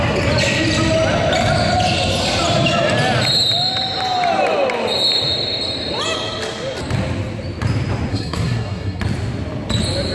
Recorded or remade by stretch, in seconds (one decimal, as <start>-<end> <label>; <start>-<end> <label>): 0.0-8.1 recorded; 8.1-9.0 remade; 9.0-10.1 recorded

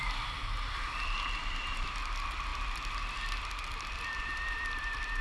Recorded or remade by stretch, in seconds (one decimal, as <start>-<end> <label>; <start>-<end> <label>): 0.0-5.2 remade

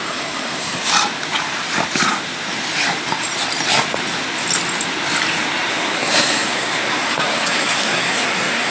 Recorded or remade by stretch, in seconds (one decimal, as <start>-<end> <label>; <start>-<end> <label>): 0.0-0.9 remade; 0.9-5.7 recorded; 5.7-8.7 remade